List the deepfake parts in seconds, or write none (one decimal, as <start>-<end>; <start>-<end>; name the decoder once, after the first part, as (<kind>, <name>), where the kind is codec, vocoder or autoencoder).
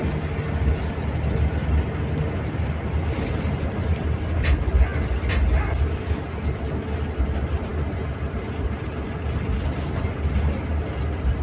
none